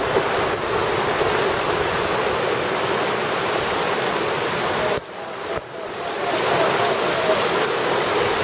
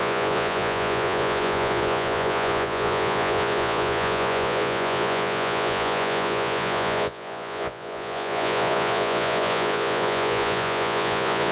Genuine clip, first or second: first